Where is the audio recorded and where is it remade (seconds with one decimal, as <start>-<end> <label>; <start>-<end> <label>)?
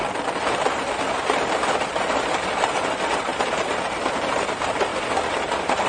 0.0-3.3 recorded; 3.3-4.0 remade; 4.0-5.9 recorded